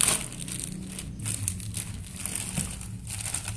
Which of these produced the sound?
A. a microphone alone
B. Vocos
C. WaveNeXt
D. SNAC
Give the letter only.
A